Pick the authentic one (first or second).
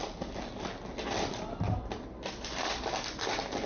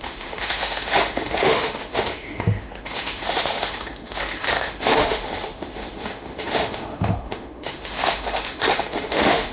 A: first